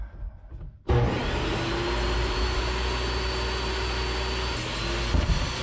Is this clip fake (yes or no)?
no